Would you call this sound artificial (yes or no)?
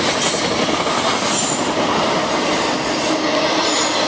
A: no